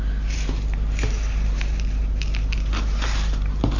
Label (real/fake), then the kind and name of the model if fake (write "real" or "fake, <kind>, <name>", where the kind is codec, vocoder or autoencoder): fake, vocoder, BigVGAN v2